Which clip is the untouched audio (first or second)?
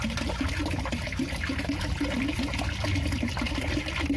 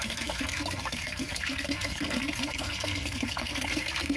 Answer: first